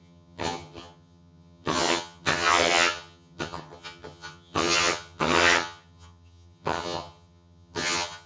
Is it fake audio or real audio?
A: fake